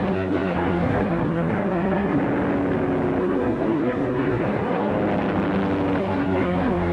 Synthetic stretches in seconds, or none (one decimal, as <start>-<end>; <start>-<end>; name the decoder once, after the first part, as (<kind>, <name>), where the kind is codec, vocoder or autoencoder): 0.0-2.2 (codec, SNAC); 3.2-4.9; 6.0-6.9